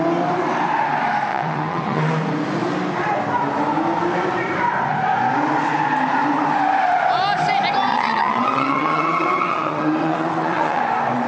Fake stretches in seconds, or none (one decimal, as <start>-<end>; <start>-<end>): 1.3-2.1; 7.9-10.8